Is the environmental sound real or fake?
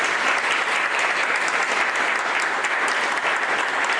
real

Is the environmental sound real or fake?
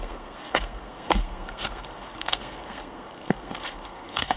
fake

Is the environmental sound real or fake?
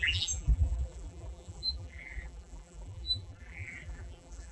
fake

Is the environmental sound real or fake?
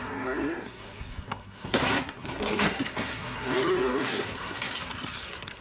fake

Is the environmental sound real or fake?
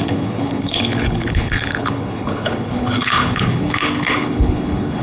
fake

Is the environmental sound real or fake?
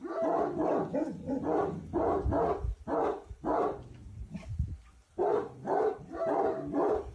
real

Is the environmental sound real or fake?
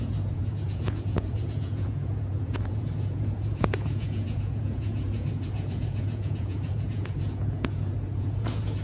fake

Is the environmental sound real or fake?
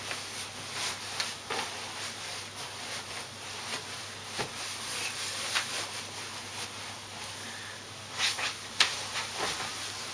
real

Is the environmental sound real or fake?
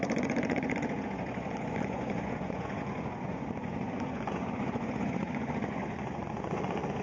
fake